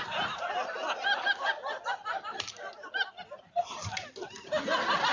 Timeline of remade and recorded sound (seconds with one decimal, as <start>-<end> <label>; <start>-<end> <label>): 0.0-5.1 recorded